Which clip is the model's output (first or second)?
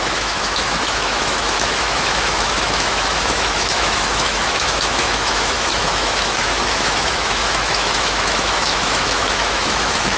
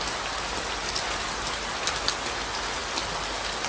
first